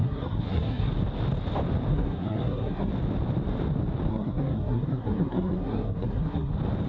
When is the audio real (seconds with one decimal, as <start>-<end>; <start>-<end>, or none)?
0.9-1.9; 2.9-4.1; 6.5-6.9